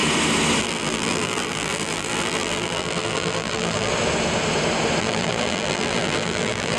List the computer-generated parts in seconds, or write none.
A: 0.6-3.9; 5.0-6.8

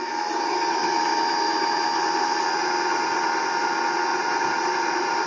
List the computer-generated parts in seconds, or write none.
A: 4.1-5.3

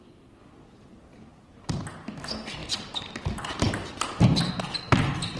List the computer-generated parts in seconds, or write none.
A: 1.3-2.1; 2.6-4.5